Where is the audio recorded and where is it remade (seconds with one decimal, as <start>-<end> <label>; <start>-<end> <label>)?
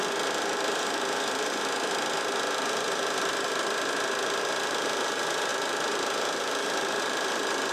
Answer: 0.0-7.7 recorded